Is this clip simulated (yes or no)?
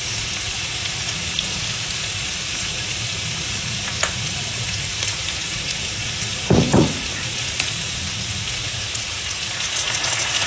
yes